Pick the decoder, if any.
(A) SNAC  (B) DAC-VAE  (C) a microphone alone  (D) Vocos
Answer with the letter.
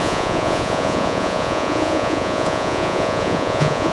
D